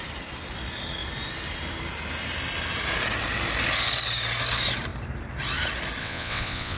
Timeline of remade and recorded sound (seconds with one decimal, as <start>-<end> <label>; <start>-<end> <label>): 0.0-6.0 recorded; 6.0-6.8 remade